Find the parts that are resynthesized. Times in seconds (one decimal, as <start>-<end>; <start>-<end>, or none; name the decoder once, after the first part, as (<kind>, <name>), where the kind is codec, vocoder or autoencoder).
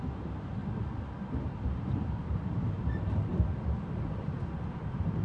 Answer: 0.0-0.6 (vocoder, BigVGAN v2); 1.8-3.3; 4.8-5.2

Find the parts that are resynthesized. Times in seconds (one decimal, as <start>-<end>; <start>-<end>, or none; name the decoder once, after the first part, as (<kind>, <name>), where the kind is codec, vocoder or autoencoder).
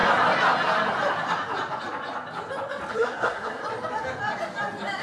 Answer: 2.9-3.6 (codec, SNAC)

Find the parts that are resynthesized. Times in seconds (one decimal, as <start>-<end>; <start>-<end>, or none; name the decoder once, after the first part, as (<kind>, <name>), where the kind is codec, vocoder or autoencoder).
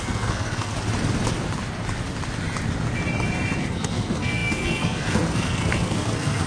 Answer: 0.0-0.7 (codec, SNAC); 3.7-6.5